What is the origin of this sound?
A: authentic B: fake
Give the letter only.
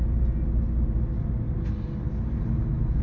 A